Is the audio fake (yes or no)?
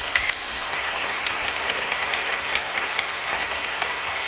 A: yes